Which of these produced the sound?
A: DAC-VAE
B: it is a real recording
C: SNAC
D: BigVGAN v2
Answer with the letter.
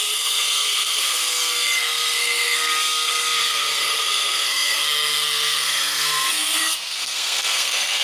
C